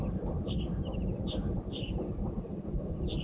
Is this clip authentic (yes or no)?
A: no